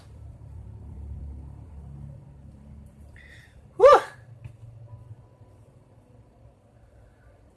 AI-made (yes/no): yes